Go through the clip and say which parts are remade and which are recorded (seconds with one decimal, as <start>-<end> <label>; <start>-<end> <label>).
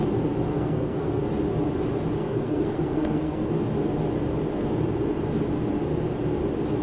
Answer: 0.0-0.5 recorded; 0.5-1.2 remade; 1.2-2.2 recorded; 2.2-3.5 remade; 3.5-6.8 recorded